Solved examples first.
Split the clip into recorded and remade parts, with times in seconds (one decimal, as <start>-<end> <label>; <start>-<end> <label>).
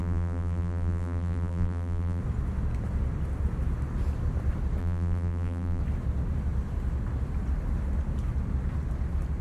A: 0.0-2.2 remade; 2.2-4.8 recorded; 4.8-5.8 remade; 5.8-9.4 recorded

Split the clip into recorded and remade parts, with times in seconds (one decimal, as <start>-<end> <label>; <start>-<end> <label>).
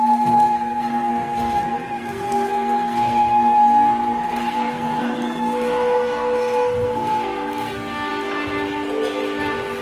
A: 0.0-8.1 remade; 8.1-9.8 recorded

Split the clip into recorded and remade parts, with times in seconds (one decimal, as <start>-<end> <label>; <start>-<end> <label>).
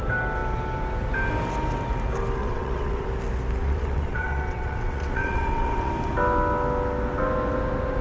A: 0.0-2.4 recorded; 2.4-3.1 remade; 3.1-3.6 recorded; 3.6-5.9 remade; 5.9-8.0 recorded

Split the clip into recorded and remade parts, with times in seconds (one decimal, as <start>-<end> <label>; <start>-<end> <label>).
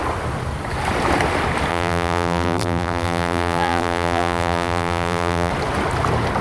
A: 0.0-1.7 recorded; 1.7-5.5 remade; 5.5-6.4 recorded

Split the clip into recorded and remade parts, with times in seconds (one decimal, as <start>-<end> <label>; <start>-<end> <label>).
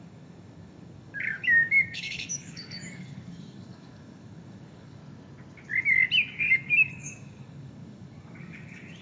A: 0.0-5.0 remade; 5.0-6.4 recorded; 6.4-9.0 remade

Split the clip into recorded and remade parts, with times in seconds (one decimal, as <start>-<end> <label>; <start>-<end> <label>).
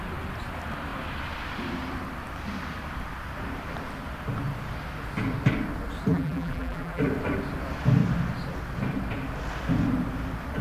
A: 0.0-6.1 recorded; 6.1-7.0 remade; 7.0-10.6 recorded